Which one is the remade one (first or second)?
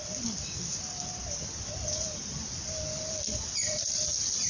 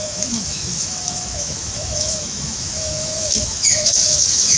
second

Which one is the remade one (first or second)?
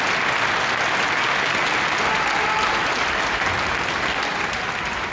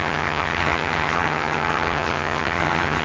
second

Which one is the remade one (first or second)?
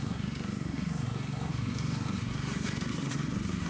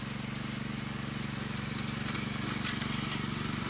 first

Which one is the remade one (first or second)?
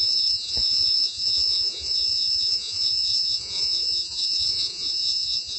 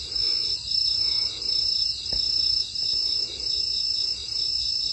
first